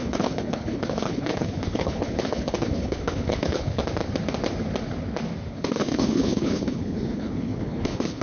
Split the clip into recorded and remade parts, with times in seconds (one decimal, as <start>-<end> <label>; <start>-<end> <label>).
0.0-3.8 remade; 3.8-5.5 recorded; 5.5-8.2 remade